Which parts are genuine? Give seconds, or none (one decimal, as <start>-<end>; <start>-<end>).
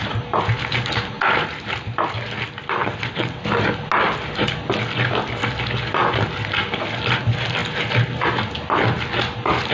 0.0-2.8; 3.4-9.7